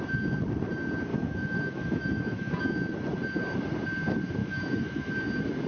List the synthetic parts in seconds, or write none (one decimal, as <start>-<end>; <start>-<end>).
1.1-2.5; 4.4-5.1